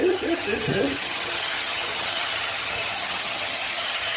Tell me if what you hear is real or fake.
fake